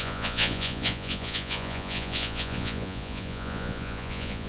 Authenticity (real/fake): fake